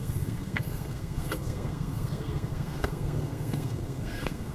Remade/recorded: remade